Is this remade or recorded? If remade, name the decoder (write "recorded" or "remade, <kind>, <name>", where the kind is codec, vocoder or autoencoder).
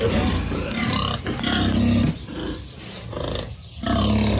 recorded